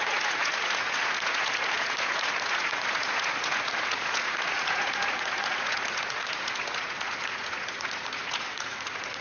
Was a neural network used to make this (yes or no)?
yes